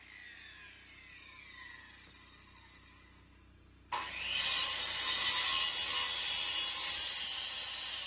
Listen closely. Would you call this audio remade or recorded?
recorded